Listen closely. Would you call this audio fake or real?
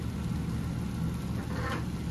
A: real